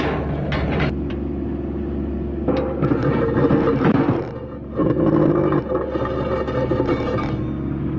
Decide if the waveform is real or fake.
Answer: real